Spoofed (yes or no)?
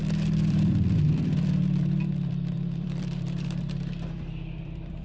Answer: yes